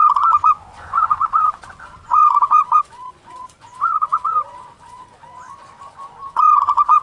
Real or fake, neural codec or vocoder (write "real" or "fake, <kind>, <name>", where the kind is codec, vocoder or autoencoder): fake, vocoder, Vocos